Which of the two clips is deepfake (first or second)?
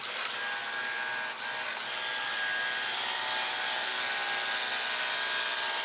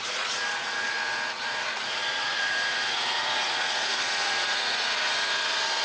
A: second